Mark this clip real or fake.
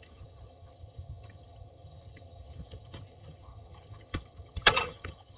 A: fake